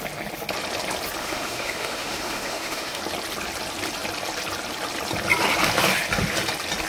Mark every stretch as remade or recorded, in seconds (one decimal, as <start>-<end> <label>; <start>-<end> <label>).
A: 0.0-1.2 recorded; 1.2-3.0 remade; 3.0-6.9 recorded